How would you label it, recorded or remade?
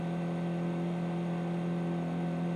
recorded